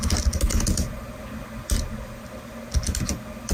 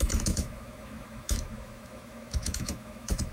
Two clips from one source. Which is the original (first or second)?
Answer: first